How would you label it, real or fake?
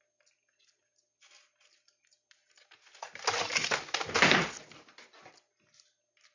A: real